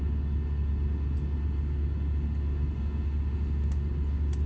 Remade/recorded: recorded